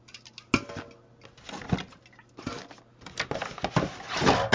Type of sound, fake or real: real